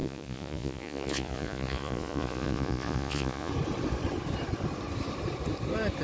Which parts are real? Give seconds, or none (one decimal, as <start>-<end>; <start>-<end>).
3.5-6.0